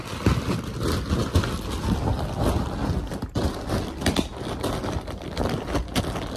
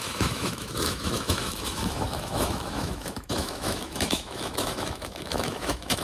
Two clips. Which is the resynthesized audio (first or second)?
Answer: second